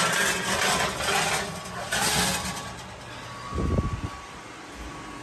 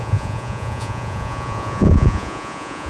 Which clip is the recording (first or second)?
first